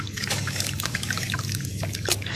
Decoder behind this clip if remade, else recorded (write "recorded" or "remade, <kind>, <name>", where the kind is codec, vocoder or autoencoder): remade, codec, DAC